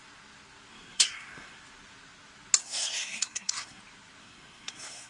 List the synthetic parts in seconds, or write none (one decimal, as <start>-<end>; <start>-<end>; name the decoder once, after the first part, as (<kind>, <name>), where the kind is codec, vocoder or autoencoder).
0.7-1.6 (codec, SNAC); 2.6-3.8; 4.2-5.1